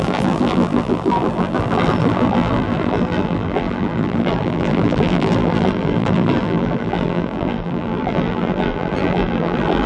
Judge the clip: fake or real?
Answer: fake